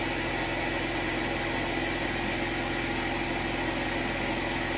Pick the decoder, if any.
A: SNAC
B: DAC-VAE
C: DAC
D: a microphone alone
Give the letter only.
D